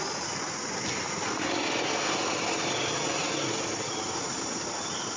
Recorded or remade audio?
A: recorded